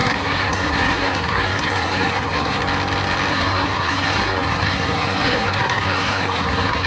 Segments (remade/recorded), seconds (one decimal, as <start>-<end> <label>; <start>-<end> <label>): 0.0-2.6 remade; 2.6-3.3 recorded; 3.3-6.9 remade